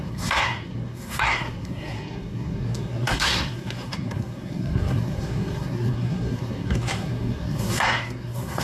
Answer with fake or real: fake